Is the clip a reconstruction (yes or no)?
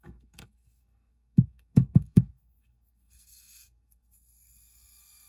yes